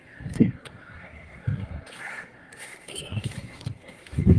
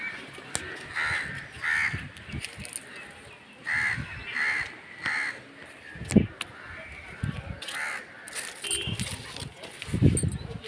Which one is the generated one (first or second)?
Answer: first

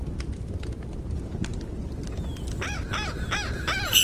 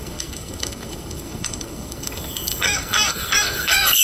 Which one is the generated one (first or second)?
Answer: second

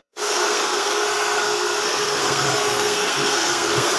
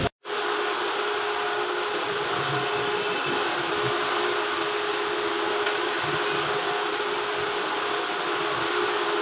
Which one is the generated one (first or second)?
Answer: first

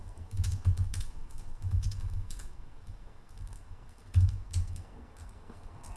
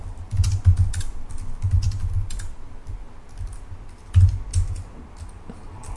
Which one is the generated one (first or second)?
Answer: first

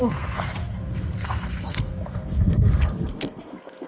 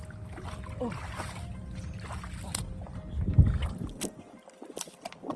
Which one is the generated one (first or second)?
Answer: first